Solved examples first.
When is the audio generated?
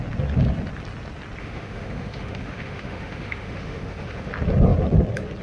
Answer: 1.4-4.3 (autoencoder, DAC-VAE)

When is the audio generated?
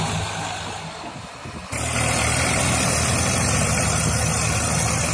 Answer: 1.6-5.1 (vocoder, BigVGAN v2)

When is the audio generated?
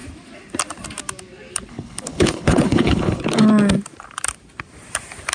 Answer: 1.7-3.2 (codec, HILCodec)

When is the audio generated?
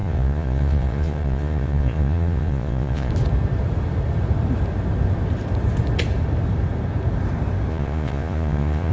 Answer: 0.0-3.1 (vocoder, Vocos); 7.7-8.9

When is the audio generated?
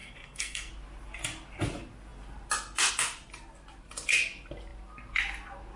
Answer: 0.0-0.7 (codec, SNAC)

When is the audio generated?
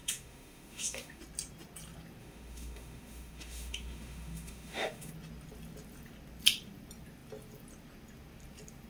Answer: 0.0-1.2 (autoencoder, DAC-VAE); 2.2-5.1